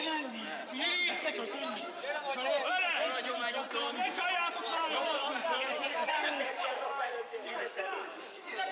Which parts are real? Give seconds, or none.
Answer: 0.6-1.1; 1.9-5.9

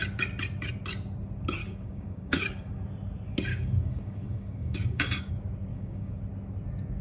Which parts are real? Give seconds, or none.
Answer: 0.0-1.6; 2.4-3.5; 5.3-5.7; 6.2-7.0

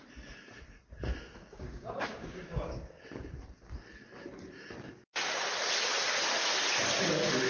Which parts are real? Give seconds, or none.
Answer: 0.0-1.5; 3.0-7.5

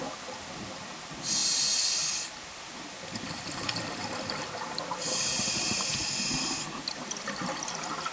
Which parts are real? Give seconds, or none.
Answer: 0.0-8.1

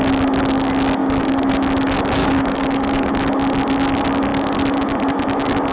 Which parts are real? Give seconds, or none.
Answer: 0.0-1.0; 1.5-2.2; 3.2-5.7

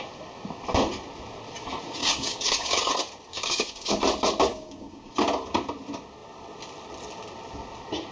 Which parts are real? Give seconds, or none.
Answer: 0.0-2.0; 2.9-3.3; 4.0-4.5; 5.1-8.1